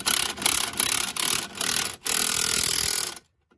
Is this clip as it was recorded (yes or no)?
yes